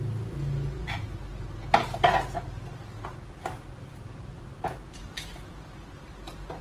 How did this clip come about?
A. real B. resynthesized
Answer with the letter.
A